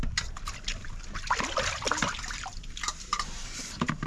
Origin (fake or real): fake